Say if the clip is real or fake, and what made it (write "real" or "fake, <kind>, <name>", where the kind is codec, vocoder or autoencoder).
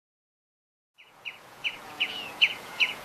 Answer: fake, vocoder, Vocos